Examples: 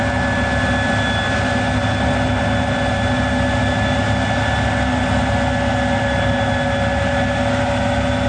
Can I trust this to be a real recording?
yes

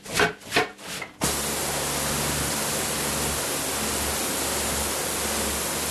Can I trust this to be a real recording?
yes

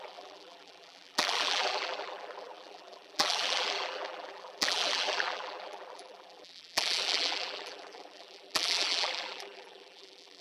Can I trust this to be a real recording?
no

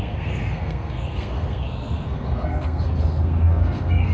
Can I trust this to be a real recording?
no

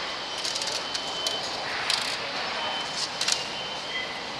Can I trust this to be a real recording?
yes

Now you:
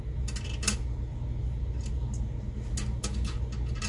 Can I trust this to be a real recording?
yes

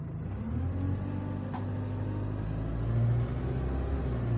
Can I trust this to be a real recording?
yes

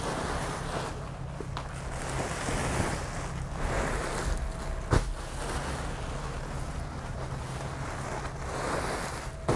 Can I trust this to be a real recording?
yes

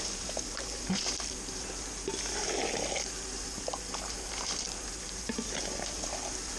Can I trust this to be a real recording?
yes